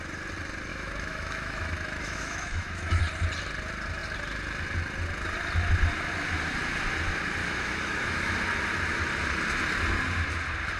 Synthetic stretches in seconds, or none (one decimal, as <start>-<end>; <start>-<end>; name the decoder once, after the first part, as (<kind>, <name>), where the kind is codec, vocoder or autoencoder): 0.7-3.0 (autoencoder, DAC-VAE); 7.4-8.3